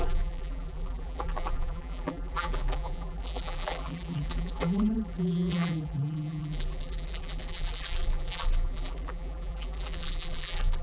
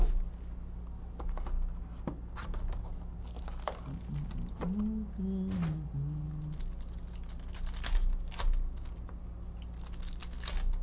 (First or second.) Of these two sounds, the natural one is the second